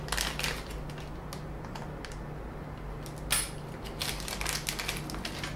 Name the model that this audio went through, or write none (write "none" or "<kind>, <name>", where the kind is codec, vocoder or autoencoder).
none